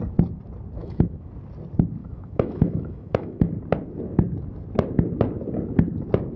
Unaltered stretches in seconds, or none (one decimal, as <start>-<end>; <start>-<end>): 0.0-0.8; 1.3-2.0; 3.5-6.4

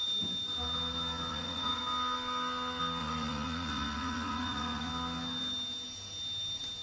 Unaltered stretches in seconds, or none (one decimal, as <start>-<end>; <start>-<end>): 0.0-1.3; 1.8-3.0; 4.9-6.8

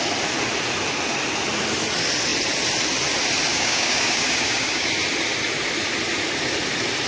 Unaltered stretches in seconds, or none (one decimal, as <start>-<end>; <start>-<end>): 0.0-3.5; 4.9-7.1

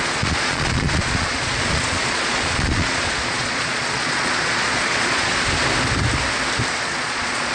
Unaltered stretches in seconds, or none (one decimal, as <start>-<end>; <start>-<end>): 5.3-6.9

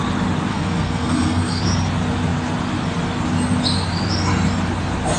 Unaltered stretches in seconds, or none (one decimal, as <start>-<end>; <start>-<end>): 0.0-0.5; 1.6-5.2